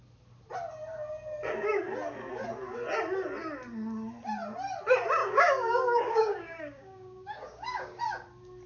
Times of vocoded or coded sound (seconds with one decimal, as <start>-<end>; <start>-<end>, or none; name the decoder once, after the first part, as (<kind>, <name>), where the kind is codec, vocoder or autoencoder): 5.2-8.0 (codec, DAC)